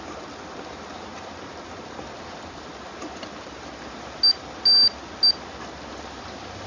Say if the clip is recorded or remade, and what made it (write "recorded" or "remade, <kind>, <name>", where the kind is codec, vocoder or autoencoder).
recorded